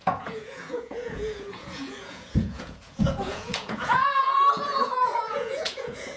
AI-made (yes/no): yes